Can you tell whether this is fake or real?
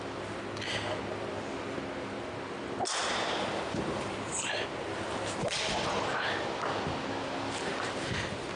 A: real